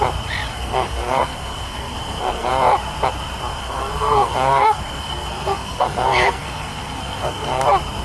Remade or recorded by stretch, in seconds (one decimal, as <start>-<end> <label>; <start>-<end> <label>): 0.0-0.5 recorded; 0.5-2.5 remade; 2.5-3.5 recorded; 3.5-7.6 remade; 7.6-8.0 recorded